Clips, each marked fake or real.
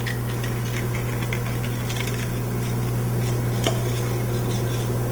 real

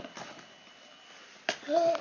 real